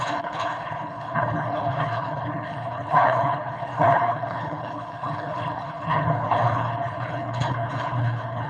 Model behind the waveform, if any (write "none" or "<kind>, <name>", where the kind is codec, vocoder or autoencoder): codec, HILCodec